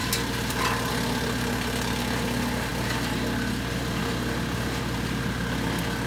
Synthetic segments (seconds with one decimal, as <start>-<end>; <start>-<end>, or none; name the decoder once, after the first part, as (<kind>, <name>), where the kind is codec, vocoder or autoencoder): none